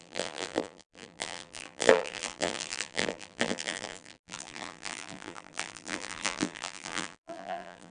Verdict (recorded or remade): remade